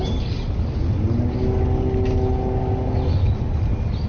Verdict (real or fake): real